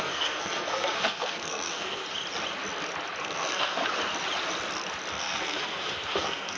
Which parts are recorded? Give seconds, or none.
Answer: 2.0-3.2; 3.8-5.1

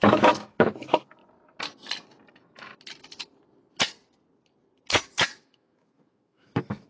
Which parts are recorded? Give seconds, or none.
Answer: 1.2-2.3; 2.7-5.4

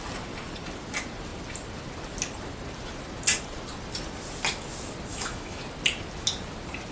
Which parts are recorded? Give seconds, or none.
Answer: 0.0-5.1; 5.6-6.9